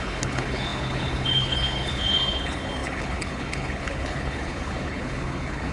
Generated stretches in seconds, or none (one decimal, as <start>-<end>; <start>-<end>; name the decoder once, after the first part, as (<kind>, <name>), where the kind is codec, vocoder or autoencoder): 0.0-5.7 (codec, HILCodec)